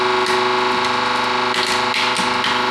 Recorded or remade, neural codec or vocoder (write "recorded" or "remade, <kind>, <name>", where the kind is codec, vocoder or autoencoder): remade, vocoder, BigVGAN v2